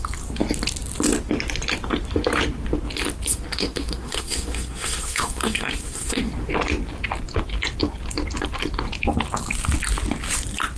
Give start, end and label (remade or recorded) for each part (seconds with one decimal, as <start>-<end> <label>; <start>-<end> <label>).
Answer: 0.0-3.3 recorded; 3.3-6.3 remade; 6.3-10.8 recorded